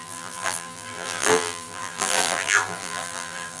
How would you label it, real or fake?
fake